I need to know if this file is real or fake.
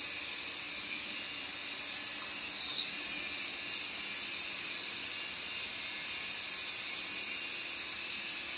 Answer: real